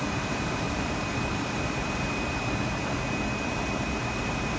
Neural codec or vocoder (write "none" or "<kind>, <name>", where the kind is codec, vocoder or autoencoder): vocoder, BigVGAN v2